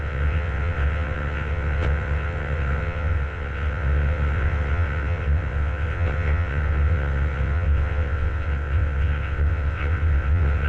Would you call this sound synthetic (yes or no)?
yes